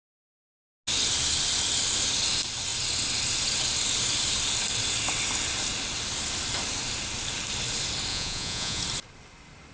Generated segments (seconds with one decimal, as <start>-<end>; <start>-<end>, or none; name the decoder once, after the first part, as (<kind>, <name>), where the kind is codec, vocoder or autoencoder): 8.1-8.8 (vocoder, Vocos)